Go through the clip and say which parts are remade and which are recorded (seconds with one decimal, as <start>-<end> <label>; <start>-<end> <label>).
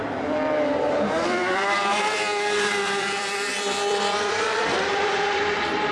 0.0-5.9 remade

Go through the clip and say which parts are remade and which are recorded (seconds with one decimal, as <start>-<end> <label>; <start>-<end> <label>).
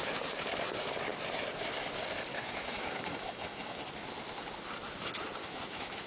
0.0-2.3 recorded; 2.3-3.8 remade; 3.8-5.4 recorded; 5.4-6.1 remade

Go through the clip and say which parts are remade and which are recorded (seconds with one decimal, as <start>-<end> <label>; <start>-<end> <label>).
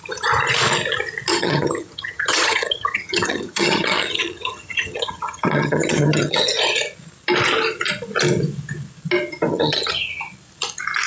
0.0-1.3 recorded; 1.3-6.6 remade; 6.6-9.5 recorded; 9.5-10.2 remade; 10.2-11.1 recorded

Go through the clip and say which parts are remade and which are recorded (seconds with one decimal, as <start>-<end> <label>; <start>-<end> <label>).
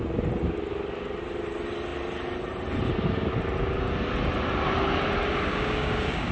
0.0-5.5 recorded; 5.5-6.3 remade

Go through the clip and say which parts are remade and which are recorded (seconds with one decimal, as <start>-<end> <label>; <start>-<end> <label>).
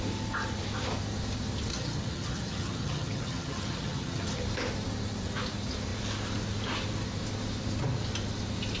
0.0-1.7 recorded; 1.7-4.4 remade; 4.4-8.8 recorded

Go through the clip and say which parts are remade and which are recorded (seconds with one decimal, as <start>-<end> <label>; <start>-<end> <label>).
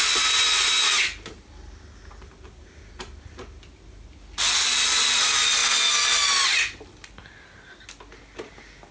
0.0-8.9 recorded